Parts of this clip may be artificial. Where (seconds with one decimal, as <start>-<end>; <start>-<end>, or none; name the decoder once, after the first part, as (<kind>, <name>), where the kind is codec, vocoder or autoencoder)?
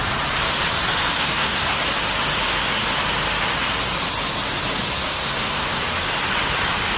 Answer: 1.2-1.8 (codec, SNAC); 5.1-5.8